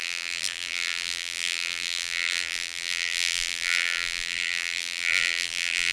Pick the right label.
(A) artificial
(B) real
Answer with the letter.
A